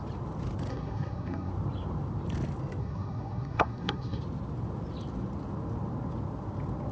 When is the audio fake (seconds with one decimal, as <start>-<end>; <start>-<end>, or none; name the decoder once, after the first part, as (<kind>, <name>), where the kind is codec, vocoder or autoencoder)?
0.7-1.5 (codec, SNAC); 2.8-4.2